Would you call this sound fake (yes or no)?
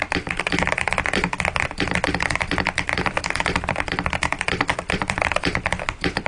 yes